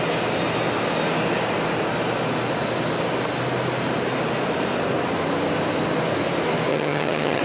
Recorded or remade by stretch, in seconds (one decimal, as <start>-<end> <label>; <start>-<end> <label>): 0.0-6.7 recorded; 6.7-7.4 remade